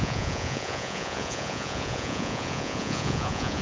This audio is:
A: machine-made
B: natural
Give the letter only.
A